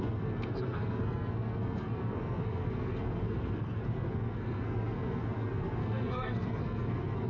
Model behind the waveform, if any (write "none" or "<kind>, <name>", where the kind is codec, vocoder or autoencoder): codec, SNAC